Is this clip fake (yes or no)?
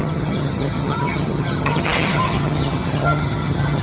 yes